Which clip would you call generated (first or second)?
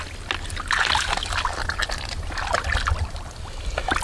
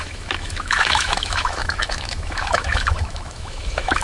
second